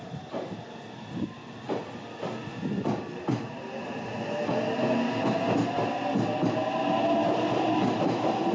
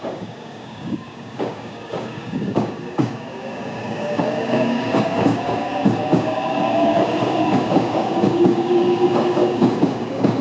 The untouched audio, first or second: first